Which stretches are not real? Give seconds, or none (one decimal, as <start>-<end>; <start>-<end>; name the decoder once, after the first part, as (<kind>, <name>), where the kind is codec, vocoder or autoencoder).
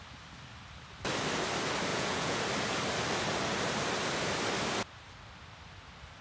1.9-2.4 (vocoder, Vocos)